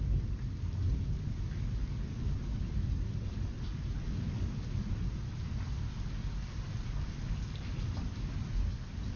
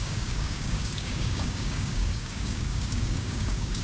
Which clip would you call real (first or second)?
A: first